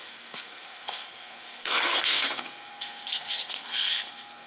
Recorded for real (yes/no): no